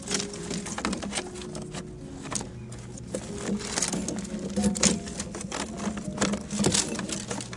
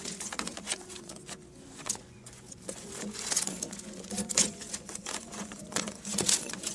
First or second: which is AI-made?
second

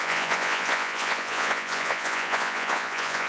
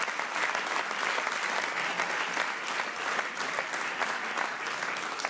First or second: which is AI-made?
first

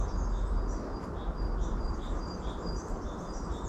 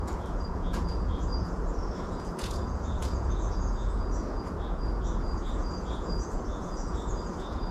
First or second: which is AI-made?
second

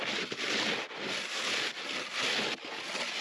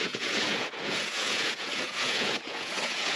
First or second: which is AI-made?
second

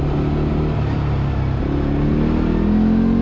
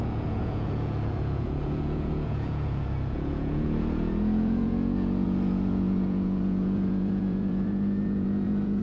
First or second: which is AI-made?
second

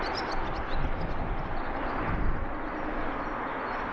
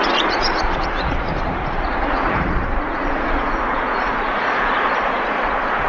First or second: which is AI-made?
second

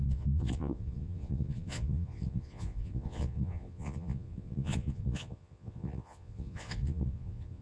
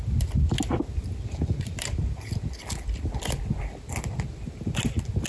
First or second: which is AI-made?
first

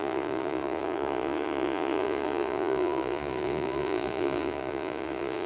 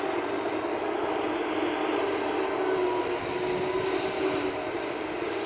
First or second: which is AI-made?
first